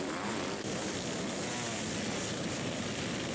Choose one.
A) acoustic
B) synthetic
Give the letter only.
A